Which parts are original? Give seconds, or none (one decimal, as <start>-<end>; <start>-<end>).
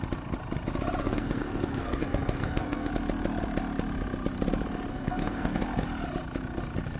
0.0-1.0; 2.9-4.9; 5.6-7.0